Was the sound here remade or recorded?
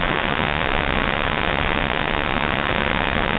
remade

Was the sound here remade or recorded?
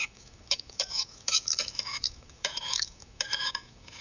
remade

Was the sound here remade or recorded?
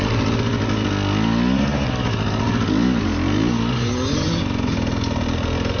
recorded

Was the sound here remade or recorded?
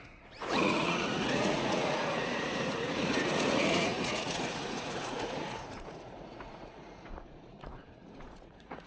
remade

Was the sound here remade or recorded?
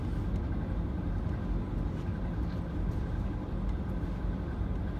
recorded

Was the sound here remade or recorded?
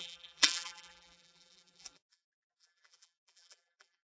remade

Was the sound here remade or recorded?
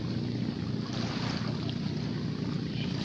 recorded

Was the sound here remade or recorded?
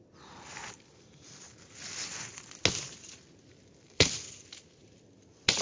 recorded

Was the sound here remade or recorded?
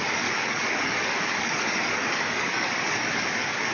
remade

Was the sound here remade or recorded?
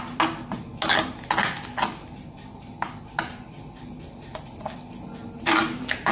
recorded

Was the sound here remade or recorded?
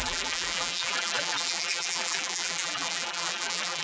remade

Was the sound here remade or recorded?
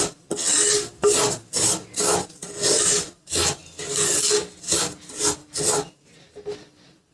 recorded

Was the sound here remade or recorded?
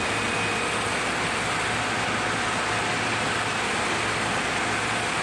recorded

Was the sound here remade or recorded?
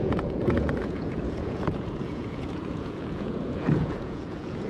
remade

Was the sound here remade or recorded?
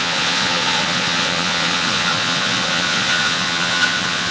remade